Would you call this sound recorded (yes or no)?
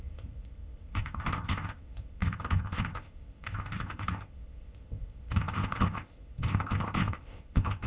no